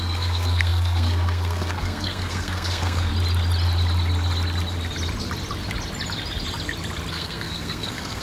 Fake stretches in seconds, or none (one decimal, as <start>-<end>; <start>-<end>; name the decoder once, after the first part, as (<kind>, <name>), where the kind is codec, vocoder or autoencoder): 0.0-3.1 (codec, SNAC); 7.1-8.2